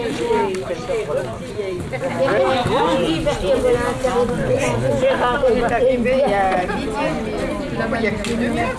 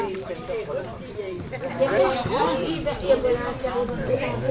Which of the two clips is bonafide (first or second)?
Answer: first